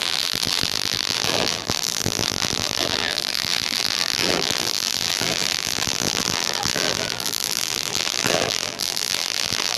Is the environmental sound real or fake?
fake